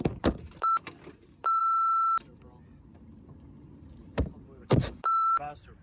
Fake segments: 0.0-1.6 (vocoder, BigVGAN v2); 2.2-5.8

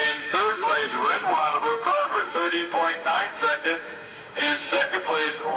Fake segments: 0.0-5.6 (autoencoder, DAC-VAE)

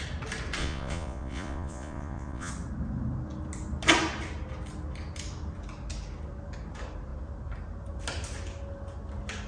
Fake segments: 0.6-2.5 (vocoder, Vocos)